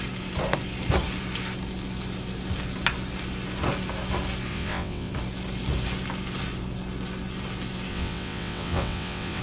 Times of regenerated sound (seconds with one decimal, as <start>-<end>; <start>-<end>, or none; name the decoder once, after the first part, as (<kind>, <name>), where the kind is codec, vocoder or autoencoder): 4.5-5.1 (vocoder, WaveNeXt); 7.9-9.4